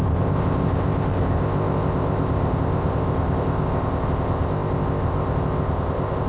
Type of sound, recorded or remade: remade